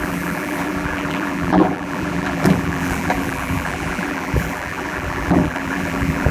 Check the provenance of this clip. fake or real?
fake